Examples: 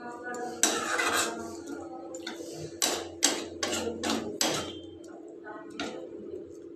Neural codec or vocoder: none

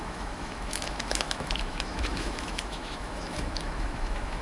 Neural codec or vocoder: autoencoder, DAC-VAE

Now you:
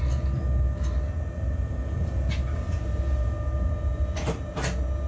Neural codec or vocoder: none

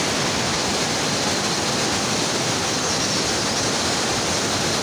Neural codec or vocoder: none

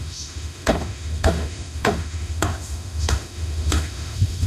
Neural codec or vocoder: autoencoder, DAC-VAE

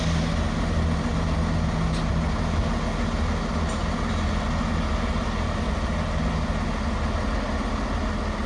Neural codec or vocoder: none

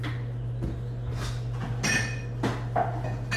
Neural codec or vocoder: none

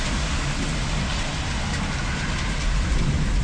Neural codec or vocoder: none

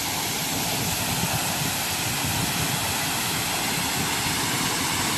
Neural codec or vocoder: none